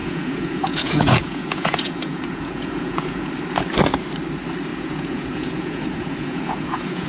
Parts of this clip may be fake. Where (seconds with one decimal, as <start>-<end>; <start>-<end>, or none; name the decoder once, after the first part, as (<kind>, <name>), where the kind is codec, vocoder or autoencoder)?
0.0-3.3 (vocoder, Vocos); 4.7-7.1